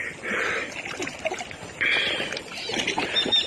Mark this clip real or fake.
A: real